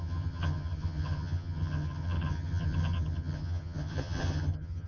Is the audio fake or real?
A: fake